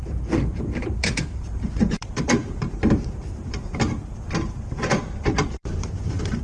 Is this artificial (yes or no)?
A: yes